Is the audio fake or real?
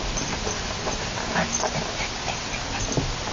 real